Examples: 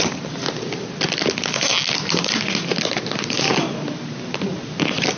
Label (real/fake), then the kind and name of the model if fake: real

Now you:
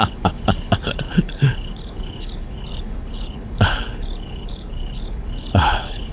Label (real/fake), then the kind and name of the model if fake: fake, codec, HILCodec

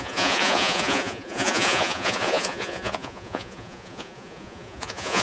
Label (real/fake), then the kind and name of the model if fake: fake, vocoder, Vocos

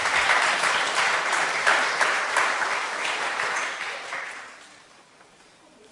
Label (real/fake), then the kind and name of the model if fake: fake, vocoder, BigVGAN v2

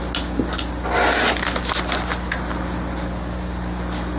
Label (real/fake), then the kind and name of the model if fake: real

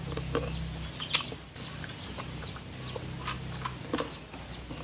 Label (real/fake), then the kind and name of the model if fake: real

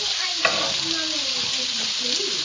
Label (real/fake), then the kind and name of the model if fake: real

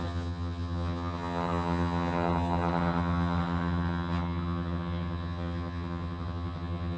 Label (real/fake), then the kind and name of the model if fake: fake, vocoder, HiFi-GAN